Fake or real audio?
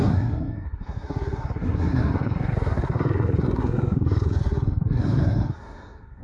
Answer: fake